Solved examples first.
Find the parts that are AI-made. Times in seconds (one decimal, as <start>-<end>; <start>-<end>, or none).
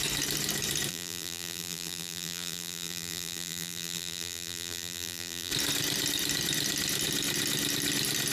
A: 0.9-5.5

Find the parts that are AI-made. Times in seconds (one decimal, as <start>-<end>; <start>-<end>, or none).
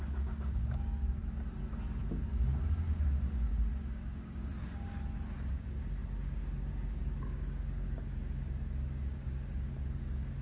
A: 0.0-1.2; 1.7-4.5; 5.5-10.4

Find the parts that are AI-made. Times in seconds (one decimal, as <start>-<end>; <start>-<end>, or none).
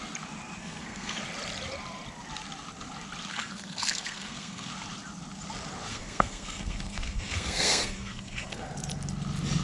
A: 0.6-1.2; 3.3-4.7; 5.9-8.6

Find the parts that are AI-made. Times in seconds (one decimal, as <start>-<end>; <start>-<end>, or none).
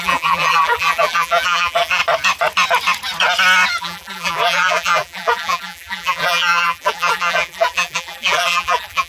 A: 0.0-2.0; 3.8-9.1